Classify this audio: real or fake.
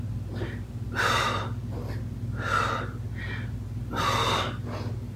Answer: real